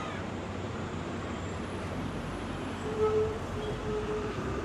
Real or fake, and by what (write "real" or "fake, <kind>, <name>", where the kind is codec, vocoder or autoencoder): fake, vocoder, BigVGAN v2